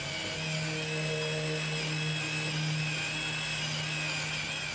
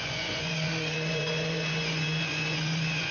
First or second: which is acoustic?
first